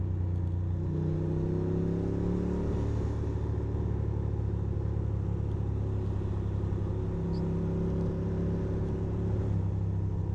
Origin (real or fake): real